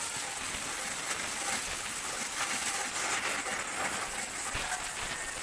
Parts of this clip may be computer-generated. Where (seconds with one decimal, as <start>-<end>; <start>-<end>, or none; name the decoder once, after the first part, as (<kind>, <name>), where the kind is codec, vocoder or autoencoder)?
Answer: 1.7-2.2 (codec, HILCodec)